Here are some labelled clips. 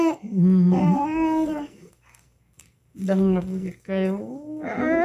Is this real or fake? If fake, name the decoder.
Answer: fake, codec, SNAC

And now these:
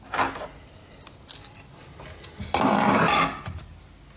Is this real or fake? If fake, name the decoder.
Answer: real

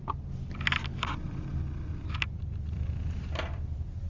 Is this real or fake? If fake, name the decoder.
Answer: real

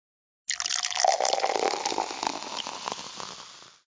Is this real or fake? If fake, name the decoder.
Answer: real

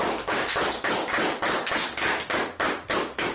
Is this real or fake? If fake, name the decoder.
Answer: real